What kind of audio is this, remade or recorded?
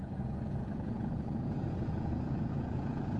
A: remade